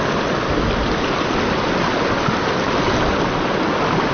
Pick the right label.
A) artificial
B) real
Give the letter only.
B